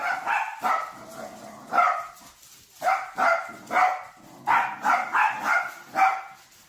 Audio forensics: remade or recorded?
recorded